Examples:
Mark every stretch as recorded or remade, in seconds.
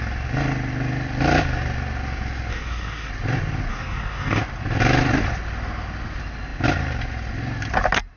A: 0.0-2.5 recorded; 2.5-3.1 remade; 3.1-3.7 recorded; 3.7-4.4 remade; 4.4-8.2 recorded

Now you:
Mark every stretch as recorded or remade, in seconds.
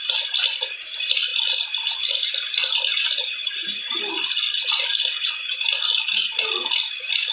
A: 0.0-3.2 recorded; 3.2-4.1 remade; 4.1-7.3 recorded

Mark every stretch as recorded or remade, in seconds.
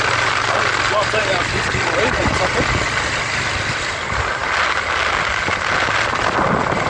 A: 0.0-6.9 recorded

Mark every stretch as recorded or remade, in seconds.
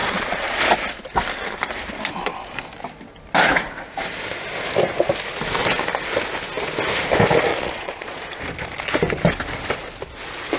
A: 0.0-0.6 remade; 0.6-7.5 recorded; 7.5-8.4 remade; 8.4-10.6 recorded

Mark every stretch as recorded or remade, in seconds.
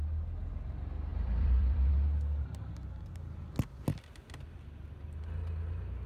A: 0.0-1.1 recorded; 1.1-1.9 remade; 1.9-6.1 recorded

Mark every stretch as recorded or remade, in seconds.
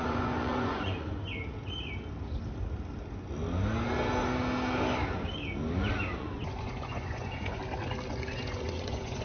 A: 0.0-1.2 remade; 1.2-6.2 recorded; 6.2-7.6 remade; 7.6-8.1 recorded; 8.1-9.2 remade